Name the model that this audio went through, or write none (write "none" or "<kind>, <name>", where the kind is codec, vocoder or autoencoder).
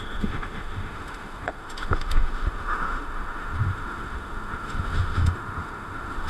autoencoder, DAC-VAE